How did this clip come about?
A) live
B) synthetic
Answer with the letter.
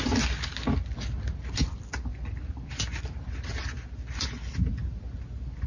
A